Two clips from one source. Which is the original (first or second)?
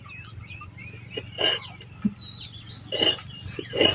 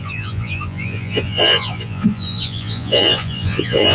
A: first